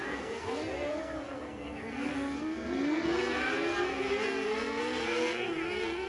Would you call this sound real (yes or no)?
no